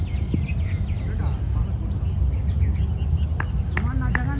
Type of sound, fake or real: real